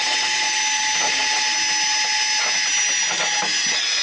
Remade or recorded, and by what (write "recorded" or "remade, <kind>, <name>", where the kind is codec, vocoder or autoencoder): recorded